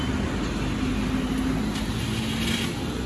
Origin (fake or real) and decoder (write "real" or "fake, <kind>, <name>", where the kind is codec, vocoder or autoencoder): real